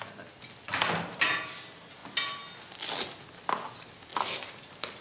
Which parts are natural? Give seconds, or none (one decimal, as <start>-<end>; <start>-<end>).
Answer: 0.0-5.0